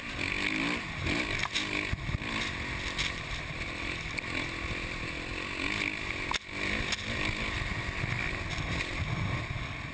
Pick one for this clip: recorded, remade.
recorded